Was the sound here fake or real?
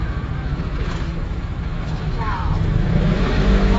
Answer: fake